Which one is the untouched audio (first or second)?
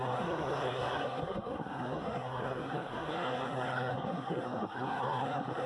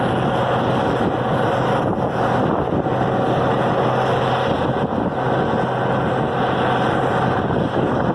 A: second